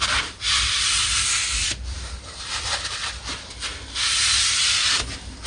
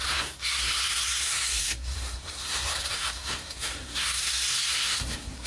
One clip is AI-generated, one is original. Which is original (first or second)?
first